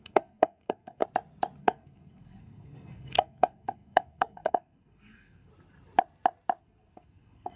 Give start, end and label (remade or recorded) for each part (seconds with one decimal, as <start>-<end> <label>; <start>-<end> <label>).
0.0-1.0 remade; 1.0-1.6 recorded; 1.6-5.5 remade; 5.5-6.6 recorded; 6.6-7.6 remade